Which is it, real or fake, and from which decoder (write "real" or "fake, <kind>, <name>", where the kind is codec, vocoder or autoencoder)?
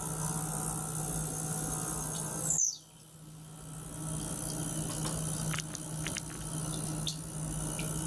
real